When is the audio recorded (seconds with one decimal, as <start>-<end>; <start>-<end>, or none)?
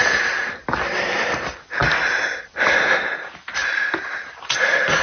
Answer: 0.0-5.0